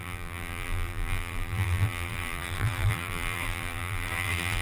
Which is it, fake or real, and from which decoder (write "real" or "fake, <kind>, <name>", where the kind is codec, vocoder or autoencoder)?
fake, vocoder, BigVGAN v2